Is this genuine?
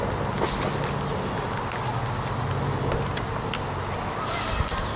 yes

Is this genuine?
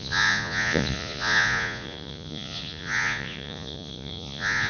no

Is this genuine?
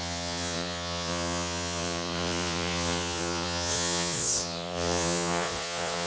no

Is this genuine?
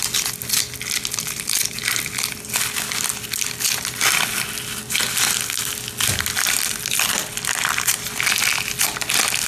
yes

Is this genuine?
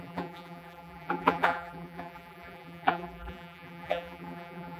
no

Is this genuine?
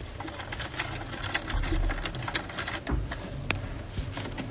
yes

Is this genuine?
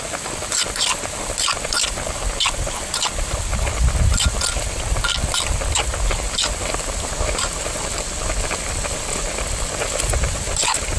yes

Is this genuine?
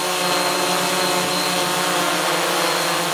yes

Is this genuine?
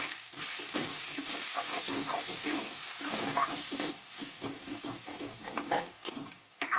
no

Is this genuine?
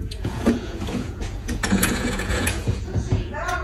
no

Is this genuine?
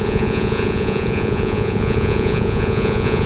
no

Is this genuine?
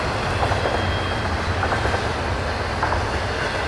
yes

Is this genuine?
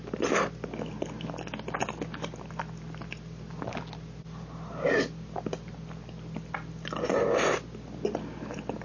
yes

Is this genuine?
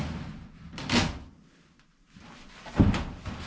yes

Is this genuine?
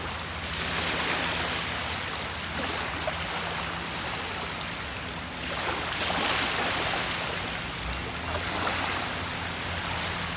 yes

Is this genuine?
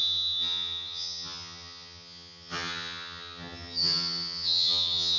no